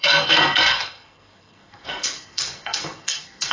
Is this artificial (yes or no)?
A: yes